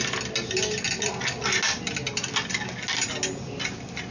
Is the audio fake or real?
real